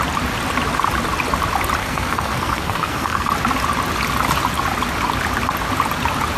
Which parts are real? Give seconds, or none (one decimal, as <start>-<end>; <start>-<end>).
0.0-1.8; 3.3-6.4